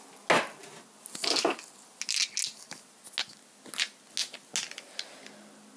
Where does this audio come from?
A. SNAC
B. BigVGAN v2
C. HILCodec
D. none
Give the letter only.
D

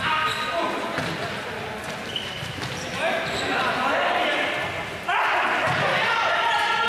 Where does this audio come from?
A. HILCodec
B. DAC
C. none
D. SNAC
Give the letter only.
C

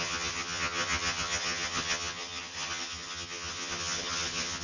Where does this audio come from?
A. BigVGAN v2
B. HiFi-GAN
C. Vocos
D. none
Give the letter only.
B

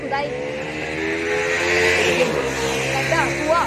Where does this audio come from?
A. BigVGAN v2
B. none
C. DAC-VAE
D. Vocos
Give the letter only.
B